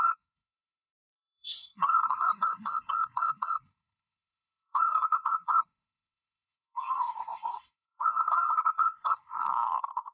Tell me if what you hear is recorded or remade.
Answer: remade